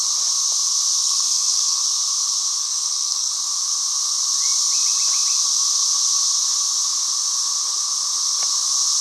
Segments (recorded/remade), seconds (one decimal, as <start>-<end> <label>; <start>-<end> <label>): 0.0-1.0 recorded; 1.0-1.8 remade; 1.8-2.6 recorded; 2.6-3.3 remade; 3.3-9.0 recorded